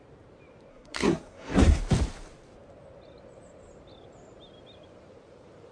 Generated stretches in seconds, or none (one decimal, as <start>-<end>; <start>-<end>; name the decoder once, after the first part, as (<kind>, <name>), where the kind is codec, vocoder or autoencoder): 0.7-1.8 (codec, SNAC)